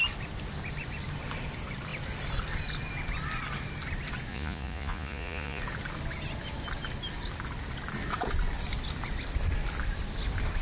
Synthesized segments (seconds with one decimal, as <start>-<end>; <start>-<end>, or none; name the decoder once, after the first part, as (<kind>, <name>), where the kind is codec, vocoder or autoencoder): 4.3-5.6 (vocoder, Vocos)